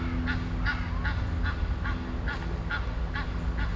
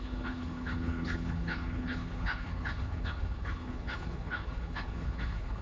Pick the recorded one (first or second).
first